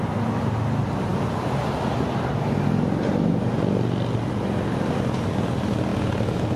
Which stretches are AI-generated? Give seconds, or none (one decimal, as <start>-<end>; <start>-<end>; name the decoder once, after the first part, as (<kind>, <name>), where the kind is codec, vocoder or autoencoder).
none